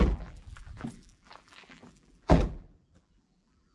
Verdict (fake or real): fake